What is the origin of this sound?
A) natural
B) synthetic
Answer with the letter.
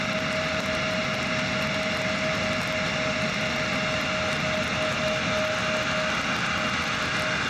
A